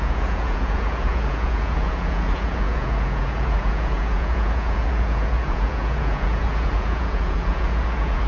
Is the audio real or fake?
fake